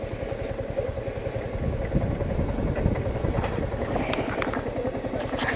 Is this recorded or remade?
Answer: recorded